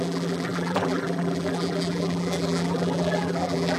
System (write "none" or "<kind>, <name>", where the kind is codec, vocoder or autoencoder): vocoder, BigVGAN v2